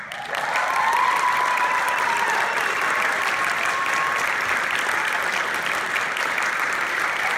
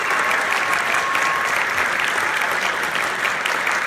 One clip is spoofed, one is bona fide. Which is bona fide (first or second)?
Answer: second